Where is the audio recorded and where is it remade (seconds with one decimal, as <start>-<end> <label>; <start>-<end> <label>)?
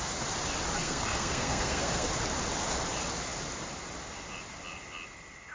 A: 0.0-0.8 recorded; 0.8-2.1 remade; 2.1-5.5 recorded